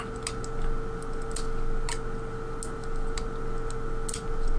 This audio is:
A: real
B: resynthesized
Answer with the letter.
A